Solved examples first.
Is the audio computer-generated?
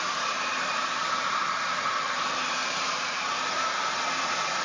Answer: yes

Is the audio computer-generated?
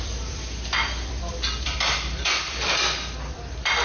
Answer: yes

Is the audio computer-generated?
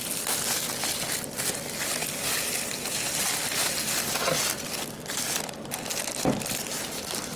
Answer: no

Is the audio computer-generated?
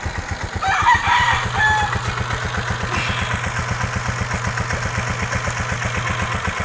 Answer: no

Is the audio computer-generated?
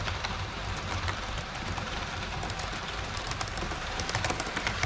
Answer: yes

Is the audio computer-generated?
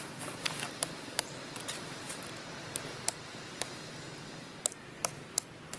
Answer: yes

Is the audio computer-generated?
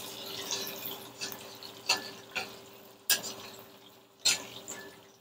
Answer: no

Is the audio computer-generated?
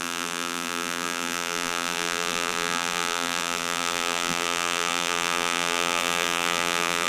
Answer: yes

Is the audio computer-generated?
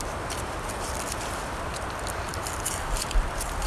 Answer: yes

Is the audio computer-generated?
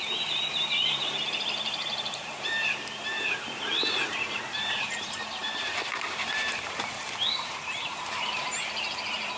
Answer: yes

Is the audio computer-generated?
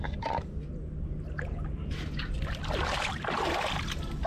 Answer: no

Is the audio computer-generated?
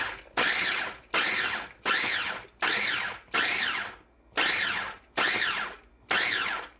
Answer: no